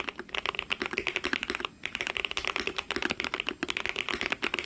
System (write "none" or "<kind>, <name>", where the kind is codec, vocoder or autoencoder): none